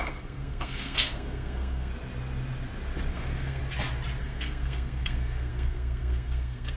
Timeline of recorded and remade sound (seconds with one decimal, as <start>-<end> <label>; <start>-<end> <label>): 0.0-1.9 remade; 1.9-3.1 recorded; 3.1-3.6 remade; 3.6-4.2 recorded; 4.2-6.8 remade